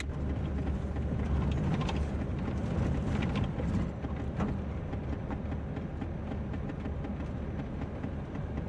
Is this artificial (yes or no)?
no